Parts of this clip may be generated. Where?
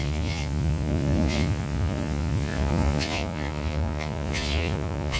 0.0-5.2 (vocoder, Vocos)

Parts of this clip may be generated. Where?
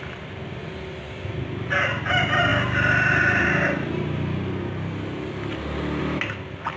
none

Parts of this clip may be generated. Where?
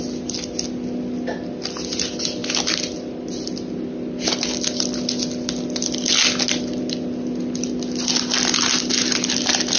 none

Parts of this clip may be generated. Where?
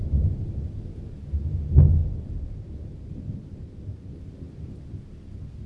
none